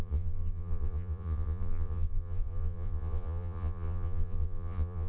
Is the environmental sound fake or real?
fake